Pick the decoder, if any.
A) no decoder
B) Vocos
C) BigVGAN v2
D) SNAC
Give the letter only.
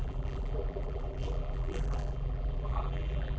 C